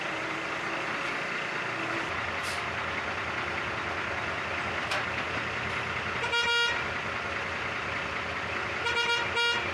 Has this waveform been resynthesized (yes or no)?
no